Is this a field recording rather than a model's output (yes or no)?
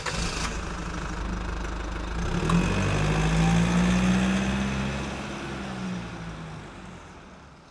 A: yes